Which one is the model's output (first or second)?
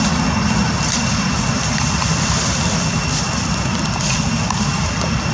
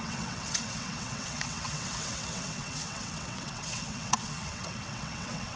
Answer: second